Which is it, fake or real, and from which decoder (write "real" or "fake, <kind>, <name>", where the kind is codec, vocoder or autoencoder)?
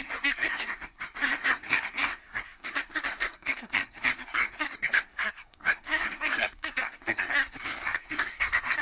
fake, codec, SNAC